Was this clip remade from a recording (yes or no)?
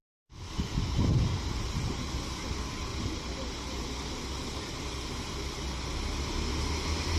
no